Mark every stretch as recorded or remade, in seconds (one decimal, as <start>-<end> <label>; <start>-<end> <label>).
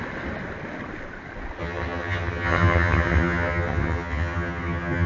0.0-1.6 recorded; 1.6-5.1 remade